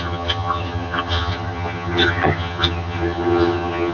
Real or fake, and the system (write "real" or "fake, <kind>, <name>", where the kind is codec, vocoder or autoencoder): fake, vocoder, HiFi-GAN